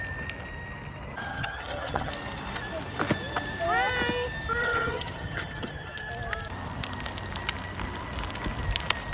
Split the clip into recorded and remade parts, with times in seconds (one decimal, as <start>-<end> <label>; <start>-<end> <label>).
0.0-1.3 recorded; 1.3-2.1 remade; 2.1-4.6 recorded; 4.6-6.1 remade; 6.1-9.1 recorded